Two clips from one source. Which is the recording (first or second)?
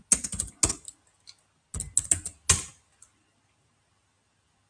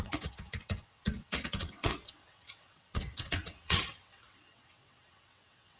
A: first